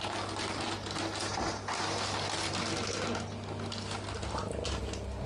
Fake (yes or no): no